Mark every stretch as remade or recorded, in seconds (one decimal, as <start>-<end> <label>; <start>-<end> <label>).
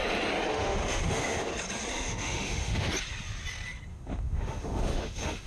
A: 0.0-0.5 recorded; 0.5-1.5 remade; 1.5-1.9 recorded; 1.9-2.9 remade; 2.9-3.9 recorded; 3.9-5.5 remade